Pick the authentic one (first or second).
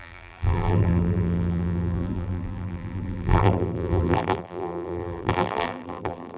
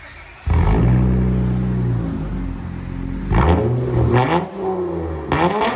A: second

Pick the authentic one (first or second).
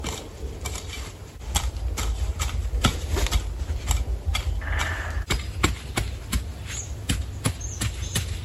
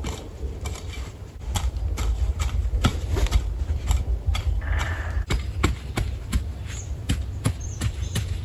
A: first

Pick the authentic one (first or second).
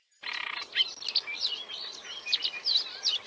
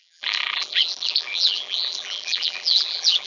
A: first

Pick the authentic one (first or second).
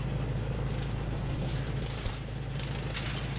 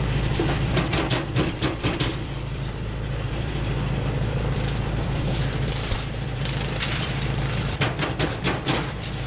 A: first